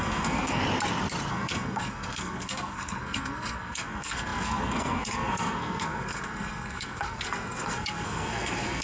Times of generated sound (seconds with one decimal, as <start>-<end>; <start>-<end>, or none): 0.0-0.6; 1.3-8.8